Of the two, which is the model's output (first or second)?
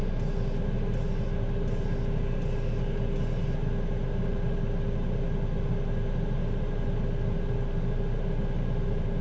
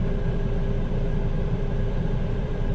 second